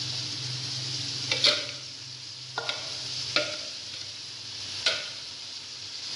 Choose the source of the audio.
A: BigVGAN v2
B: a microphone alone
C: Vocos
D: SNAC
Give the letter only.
B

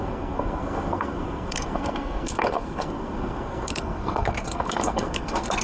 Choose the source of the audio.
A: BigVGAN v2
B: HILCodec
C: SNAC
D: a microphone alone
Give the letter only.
C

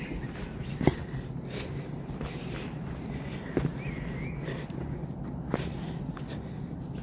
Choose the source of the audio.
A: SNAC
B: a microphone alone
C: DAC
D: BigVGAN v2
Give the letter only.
B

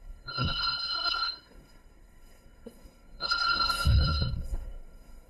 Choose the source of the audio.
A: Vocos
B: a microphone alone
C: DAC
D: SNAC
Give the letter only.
D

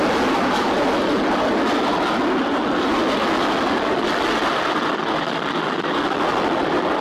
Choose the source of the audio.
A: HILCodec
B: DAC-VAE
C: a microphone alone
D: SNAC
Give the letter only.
C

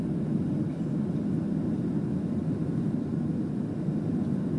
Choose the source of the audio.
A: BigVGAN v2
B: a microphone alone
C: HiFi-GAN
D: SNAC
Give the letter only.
B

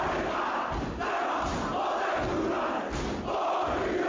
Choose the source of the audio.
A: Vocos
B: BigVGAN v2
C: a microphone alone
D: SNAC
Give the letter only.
C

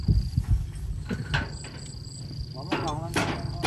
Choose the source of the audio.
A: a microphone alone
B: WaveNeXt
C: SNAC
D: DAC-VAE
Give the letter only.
A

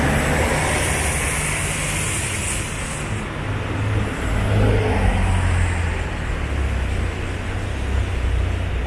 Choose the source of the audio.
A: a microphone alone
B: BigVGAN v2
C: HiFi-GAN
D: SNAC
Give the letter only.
A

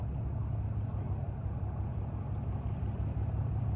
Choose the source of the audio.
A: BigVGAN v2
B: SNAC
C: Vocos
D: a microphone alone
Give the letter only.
D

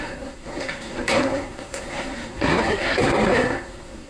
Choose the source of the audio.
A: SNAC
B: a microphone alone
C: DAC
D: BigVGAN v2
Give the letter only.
A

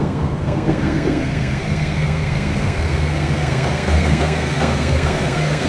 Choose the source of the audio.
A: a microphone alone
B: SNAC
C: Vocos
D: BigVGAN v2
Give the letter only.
B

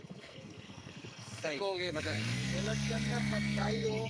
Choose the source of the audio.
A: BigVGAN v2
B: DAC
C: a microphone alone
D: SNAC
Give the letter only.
D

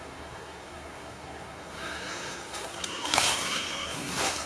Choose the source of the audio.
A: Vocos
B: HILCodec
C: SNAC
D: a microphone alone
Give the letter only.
C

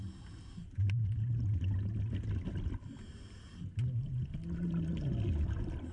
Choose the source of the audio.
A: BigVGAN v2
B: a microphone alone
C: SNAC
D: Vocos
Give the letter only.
B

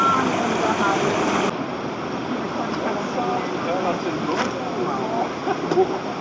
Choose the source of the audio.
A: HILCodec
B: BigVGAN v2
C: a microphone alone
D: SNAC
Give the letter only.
C